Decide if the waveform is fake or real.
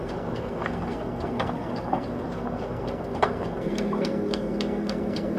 fake